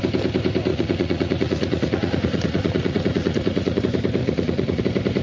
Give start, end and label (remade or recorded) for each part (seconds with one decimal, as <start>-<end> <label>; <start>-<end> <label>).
0.0-0.7 recorded; 0.7-3.8 remade; 3.8-4.2 recorded; 4.2-4.8 remade; 4.8-5.2 recorded